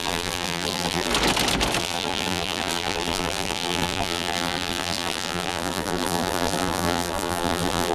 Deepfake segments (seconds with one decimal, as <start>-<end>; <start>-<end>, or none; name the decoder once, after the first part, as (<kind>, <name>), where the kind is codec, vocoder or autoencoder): 0.0-1.1 (vocoder, BigVGAN v2); 1.8-7.9

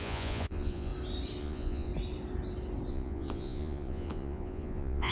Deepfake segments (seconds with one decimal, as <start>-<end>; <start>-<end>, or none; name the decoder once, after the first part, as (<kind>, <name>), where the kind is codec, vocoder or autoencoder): 0.0-0.9 (vocoder, Vocos); 1.4-1.9; 2.9-5.1

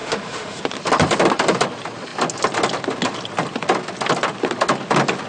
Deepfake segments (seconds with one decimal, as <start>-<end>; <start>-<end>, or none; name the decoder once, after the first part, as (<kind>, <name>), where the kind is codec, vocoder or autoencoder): 0.0-0.6 (autoencoder, DAC-VAE)

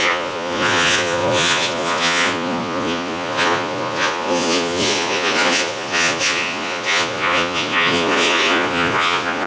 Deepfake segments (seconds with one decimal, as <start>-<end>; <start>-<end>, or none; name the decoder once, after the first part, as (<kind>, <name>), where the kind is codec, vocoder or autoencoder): 0.0-9.5 (vocoder, Vocos)

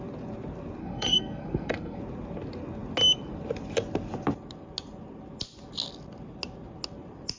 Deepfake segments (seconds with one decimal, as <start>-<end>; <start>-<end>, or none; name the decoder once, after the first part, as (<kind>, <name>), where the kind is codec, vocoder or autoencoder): 0.8-2.0 (codec, SNAC)

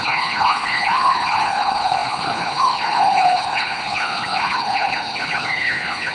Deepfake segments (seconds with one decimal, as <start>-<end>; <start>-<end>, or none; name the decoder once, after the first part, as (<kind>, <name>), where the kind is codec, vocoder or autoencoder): 0.0-6.1 (codec, HILCodec)